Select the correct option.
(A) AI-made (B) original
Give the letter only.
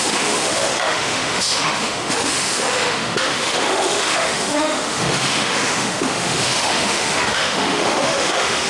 A